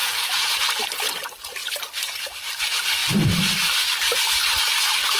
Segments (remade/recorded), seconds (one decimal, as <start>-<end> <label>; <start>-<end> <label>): 0.0-0.6 remade; 0.6-5.2 recorded

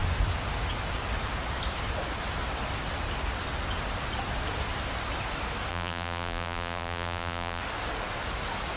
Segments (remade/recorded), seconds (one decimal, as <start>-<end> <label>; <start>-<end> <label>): 0.0-5.7 recorded; 5.7-7.6 remade; 7.6-8.8 recorded

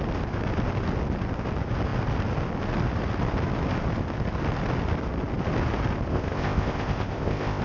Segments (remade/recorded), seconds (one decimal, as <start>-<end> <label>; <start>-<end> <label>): 0.0-6.1 recorded; 6.1-7.6 remade

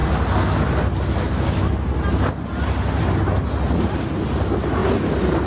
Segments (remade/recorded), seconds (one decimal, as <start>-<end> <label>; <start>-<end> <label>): 0.0-5.5 recorded

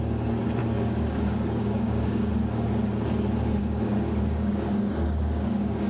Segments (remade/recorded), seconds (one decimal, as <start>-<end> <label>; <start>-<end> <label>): 0.0-0.6 recorded; 0.6-2.3 remade; 2.3-3.6 recorded; 3.6-5.9 remade

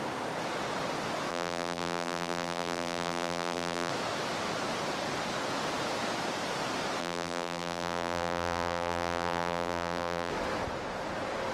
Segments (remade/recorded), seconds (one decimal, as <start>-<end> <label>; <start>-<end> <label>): 0.0-1.3 recorded; 1.3-3.9 remade; 3.9-7.0 recorded; 7.0-10.3 remade; 10.3-11.5 recorded

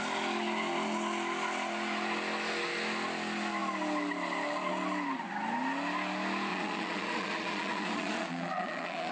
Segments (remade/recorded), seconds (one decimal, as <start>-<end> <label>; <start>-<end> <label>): 0.0-6.5 recorded; 6.5-9.1 remade